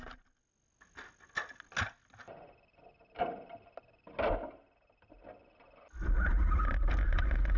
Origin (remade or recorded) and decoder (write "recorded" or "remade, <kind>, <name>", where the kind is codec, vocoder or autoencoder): recorded